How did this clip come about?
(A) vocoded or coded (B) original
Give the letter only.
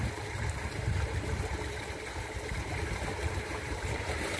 A